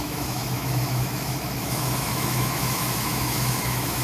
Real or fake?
fake